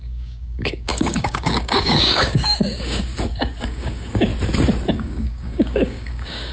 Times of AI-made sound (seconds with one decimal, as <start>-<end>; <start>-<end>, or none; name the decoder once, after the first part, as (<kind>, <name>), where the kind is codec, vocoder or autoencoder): 0.0-3.1 (codec, DAC); 3.6-4.3; 4.9-6.5